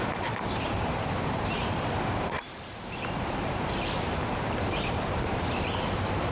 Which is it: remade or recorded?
remade